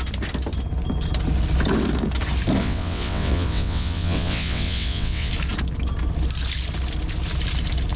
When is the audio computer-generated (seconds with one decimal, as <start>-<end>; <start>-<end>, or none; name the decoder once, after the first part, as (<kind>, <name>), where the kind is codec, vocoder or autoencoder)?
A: 2.6-5.3 (vocoder, WaveNeXt)